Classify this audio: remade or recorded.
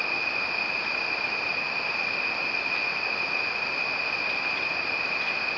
recorded